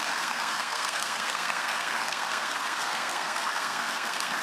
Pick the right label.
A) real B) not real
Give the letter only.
B